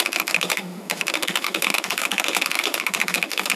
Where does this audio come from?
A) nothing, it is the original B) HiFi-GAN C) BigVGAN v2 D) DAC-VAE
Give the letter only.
D